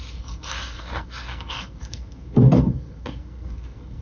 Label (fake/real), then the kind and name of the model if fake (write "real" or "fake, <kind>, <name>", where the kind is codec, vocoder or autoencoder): fake, codec, SNAC